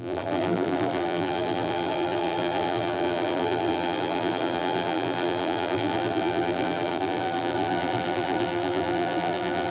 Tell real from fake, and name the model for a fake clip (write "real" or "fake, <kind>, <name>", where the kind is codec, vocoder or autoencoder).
fake, vocoder, BigVGAN v2